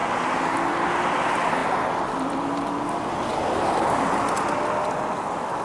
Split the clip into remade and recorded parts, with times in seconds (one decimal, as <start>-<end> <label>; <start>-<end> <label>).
0.0-5.6 recorded